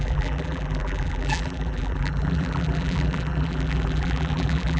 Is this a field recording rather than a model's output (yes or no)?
no